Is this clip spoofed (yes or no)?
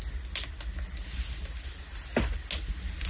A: no